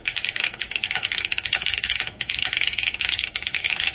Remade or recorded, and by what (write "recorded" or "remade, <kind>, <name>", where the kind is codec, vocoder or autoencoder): remade, codec, SNAC